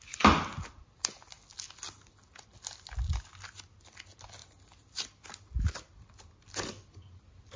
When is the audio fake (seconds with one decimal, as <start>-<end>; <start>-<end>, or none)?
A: none